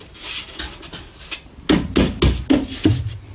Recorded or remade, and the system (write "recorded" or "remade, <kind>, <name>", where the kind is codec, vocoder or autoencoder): recorded